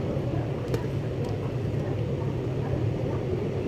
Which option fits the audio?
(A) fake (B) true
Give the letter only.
B